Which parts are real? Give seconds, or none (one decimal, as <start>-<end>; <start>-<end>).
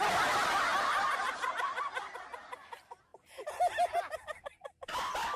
0.0-5.4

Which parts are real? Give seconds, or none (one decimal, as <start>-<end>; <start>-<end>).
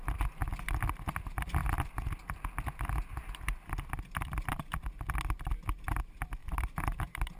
0.0-6.4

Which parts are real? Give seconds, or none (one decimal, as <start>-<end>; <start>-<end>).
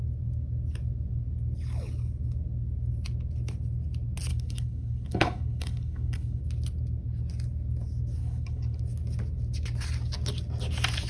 0.0-4.3; 6.4-8.2; 8.8-11.1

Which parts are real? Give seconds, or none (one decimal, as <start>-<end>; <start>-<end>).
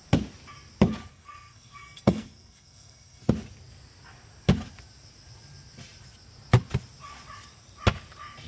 0.0-1.1; 3.3-8.5